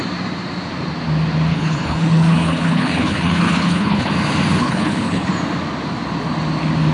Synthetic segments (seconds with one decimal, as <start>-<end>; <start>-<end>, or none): 1.5-4.1; 4.6-5.3